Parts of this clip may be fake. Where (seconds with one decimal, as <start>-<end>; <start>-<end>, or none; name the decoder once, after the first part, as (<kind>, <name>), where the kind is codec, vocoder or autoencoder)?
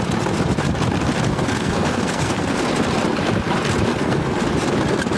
1.3-2.7 (codec, SNAC); 3.9-4.4